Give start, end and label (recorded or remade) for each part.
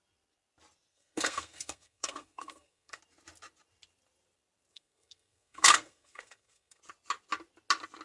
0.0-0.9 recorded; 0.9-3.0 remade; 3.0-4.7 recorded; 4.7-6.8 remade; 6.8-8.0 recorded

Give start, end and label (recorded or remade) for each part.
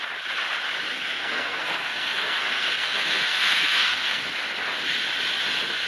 0.0-0.9 recorded; 0.9-4.2 remade; 4.2-5.9 recorded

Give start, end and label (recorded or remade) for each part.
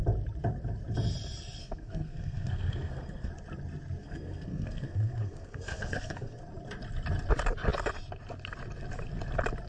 0.0-1.6 recorded; 1.6-3.3 remade; 3.3-4.0 recorded; 4.0-6.4 remade; 6.4-9.7 recorded